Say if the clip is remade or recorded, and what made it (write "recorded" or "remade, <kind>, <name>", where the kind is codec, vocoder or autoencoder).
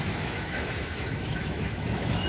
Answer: remade, autoencoder, DAC-VAE